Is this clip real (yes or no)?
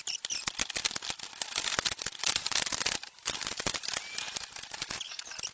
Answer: yes